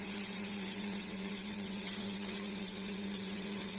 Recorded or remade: remade